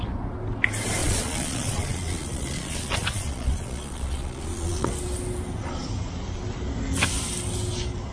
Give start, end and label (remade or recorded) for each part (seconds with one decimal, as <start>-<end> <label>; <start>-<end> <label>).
0.0-1.0 recorded; 1.0-4.9 remade; 4.9-8.1 recorded